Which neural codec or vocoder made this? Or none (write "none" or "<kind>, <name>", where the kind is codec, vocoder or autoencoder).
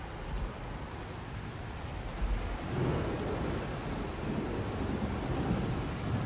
none